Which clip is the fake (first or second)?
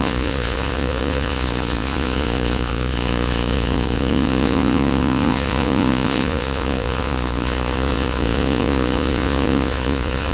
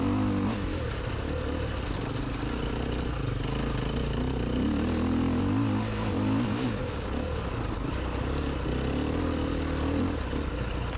first